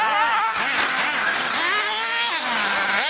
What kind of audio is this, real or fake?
real